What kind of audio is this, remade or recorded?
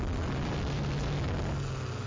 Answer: recorded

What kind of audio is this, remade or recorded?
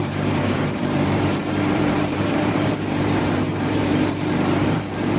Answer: remade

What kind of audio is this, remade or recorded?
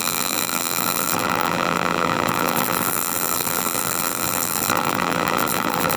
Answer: remade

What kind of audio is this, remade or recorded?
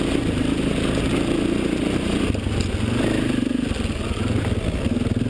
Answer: recorded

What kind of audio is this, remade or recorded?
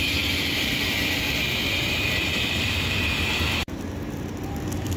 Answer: remade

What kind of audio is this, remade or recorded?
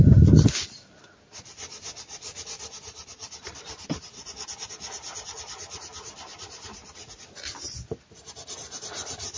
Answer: remade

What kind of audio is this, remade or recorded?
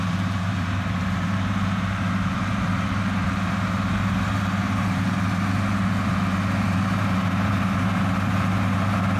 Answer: remade